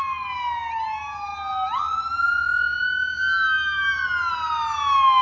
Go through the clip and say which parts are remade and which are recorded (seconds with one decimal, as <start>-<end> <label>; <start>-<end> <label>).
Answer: 0.0-5.2 recorded